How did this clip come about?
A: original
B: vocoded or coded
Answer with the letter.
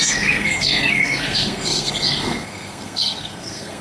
B